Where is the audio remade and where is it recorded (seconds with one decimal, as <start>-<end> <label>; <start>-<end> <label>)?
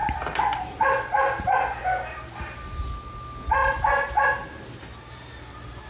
0.0-3.6 recorded; 3.6-4.3 remade; 4.3-5.9 recorded